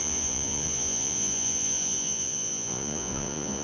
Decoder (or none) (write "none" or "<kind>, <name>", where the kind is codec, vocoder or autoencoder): vocoder, Vocos